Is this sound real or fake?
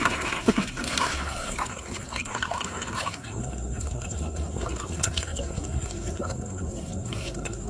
fake